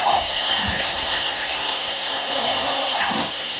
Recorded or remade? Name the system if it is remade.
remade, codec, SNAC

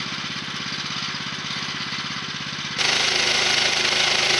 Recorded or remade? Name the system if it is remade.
recorded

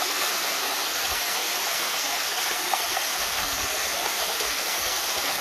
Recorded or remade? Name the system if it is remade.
remade, codec, SNAC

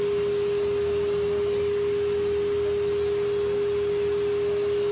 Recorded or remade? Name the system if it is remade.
recorded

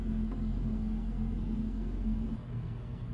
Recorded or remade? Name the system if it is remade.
remade, codec, SNAC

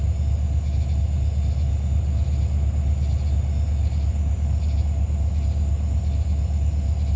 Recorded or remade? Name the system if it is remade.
recorded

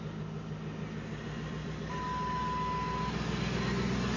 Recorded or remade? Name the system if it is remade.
recorded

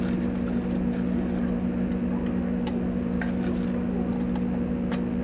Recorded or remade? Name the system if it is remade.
recorded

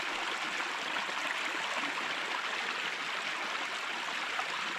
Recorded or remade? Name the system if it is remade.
recorded